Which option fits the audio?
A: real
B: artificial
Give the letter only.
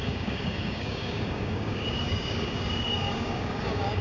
B